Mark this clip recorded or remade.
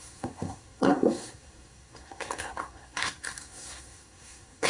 remade